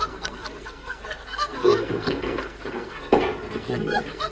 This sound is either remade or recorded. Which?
remade